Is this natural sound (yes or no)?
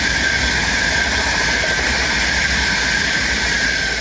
yes